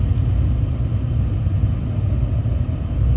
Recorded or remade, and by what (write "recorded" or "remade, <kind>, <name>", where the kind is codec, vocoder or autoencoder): recorded